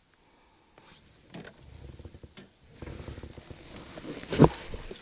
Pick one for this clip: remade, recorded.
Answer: recorded